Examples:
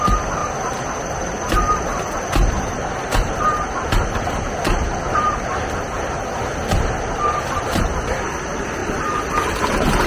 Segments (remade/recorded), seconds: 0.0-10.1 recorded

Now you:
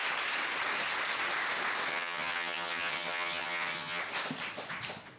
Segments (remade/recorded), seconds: 0.0-1.9 recorded; 1.9-4.0 remade; 4.0-5.2 recorded

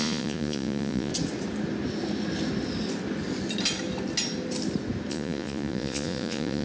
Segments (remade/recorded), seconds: 0.0-1.1 remade; 1.1-5.1 recorded; 5.1-6.6 remade

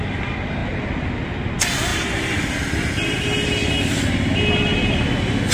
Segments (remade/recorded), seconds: 0.0-0.6 recorded; 0.6-1.1 remade; 1.1-5.5 recorded